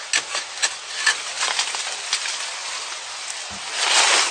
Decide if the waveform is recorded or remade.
recorded